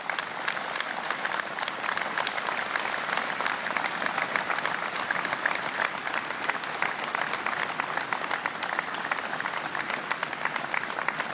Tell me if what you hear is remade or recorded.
recorded